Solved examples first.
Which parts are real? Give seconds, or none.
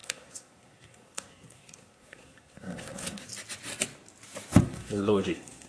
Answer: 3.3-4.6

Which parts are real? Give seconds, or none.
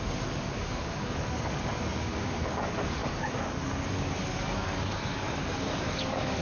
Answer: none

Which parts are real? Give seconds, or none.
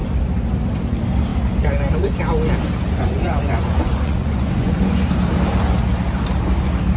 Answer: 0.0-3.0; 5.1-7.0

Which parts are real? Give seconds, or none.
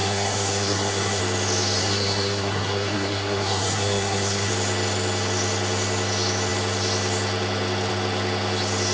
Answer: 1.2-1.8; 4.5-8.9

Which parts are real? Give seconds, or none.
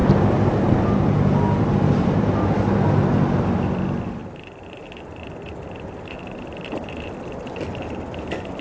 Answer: 0.0-4.2; 7.1-8.6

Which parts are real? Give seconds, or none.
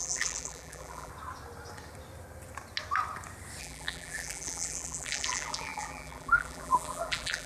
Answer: 1.1-3.6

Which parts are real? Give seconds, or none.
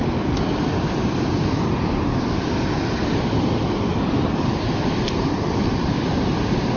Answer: none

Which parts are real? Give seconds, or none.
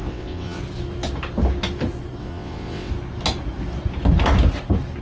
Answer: 0.6-2.2; 2.9-5.0